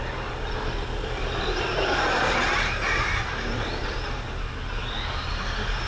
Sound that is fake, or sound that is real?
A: real